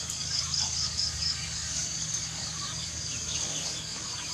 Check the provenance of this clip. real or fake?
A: fake